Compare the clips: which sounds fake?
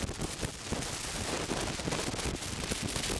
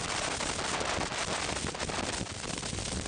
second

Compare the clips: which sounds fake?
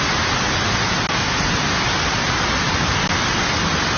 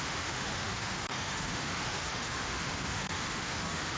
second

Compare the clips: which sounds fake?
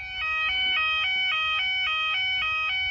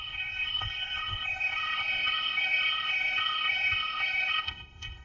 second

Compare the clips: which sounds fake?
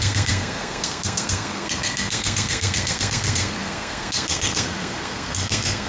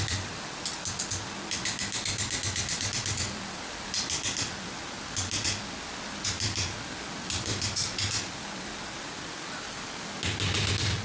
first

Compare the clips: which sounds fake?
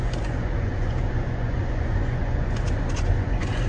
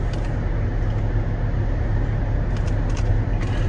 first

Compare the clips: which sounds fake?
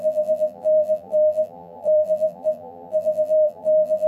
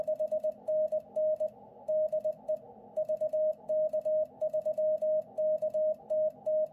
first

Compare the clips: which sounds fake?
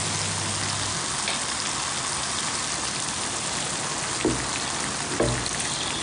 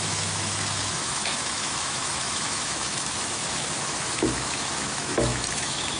second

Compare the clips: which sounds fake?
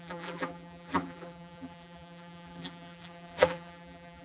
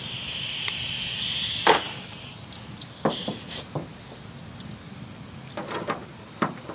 first